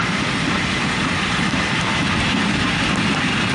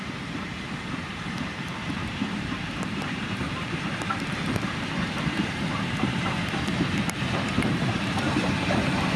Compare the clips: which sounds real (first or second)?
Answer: first